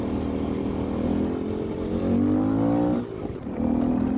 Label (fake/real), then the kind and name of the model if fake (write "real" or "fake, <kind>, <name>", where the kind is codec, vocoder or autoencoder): real